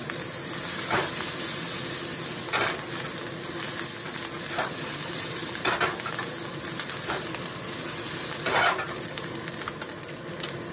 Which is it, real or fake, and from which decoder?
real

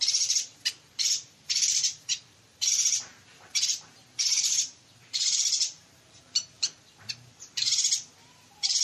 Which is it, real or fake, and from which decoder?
fake, vocoder, BigVGAN v2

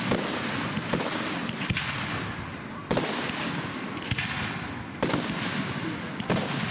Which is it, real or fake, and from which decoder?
real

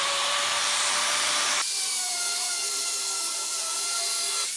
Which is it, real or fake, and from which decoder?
fake, vocoder, BigVGAN v2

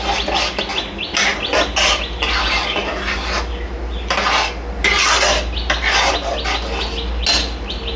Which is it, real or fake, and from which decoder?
real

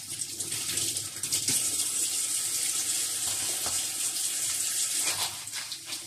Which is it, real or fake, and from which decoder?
real